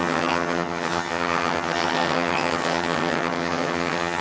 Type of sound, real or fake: fake